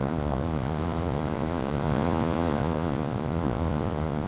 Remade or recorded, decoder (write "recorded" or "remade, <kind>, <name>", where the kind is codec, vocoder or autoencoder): remade, vocoder, Vocos